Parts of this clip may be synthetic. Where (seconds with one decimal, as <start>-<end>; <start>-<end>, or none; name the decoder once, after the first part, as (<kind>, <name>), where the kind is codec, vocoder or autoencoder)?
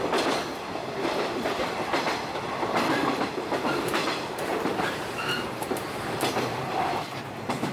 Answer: 3.0-7.7 (vocoder, BigVGAN v2)